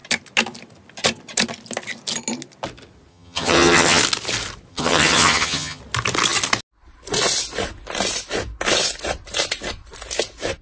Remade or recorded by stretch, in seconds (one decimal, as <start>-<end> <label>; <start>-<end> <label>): 0.0-3.1 recorded; 3.1-4.0 remade; 4.0-4.7 recorded; 4.7-5.8 remade; 5.8-10.6 recorded